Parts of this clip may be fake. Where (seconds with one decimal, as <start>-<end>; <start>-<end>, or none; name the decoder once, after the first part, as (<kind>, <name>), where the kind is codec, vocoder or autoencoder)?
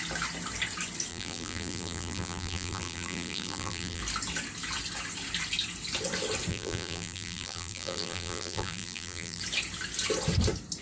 1.1-4.0 (vocoder, BigVGAN v2); 6.5-9.4